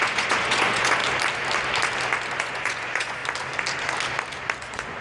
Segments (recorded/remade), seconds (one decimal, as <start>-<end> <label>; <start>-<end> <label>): 0.0-1.0 remade; 1.0-2.4 recorded; 2.4-3.2 remade; 3.2-4.6 recorded; 4.6-5.0 remade